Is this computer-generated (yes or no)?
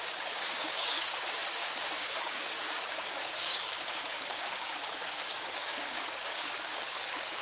yes